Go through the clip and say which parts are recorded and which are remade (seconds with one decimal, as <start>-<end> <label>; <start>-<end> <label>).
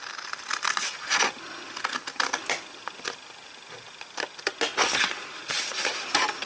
0.0-0.5 recorded; 0.5-1.2 remade; 1.2-6.5 recorded